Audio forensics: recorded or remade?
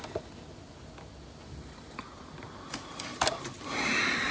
recorded